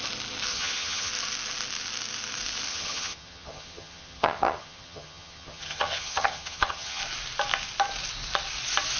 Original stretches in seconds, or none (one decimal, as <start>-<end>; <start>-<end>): 0.0-0.5; 1.1-2.7; 7.0-9.0